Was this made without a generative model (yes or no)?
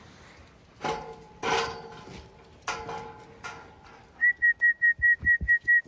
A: yes